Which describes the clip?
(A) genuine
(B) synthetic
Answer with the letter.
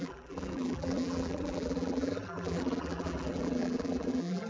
B